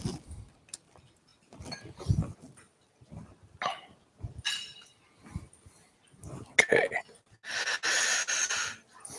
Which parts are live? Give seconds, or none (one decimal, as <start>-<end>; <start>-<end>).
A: 0.0-9.2